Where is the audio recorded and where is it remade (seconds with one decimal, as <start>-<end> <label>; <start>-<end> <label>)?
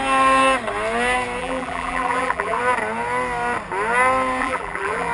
0.0-1.4 recorded; 1.4-2.6 remade; 2.6-4.4 recorded; 4.4-5.1 remade